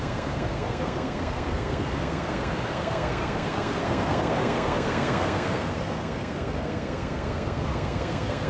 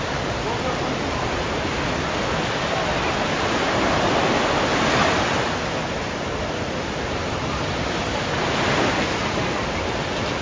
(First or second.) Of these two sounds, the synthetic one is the first